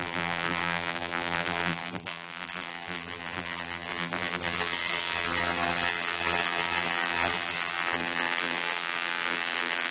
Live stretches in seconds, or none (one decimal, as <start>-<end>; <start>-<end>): none